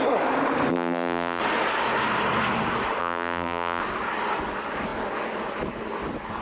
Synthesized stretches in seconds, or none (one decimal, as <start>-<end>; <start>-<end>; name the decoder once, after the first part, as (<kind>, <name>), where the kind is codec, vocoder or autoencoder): 0.7-1.4 (vocoder, BigVGAN v2); 3.0-3.8